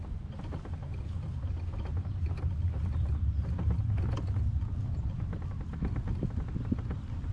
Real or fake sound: real